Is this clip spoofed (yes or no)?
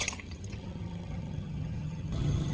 yes